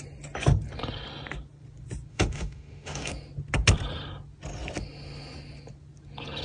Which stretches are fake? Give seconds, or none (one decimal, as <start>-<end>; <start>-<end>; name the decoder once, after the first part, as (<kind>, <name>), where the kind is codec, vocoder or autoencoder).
2.1-3.1 (autoencoder, DAC-VAE)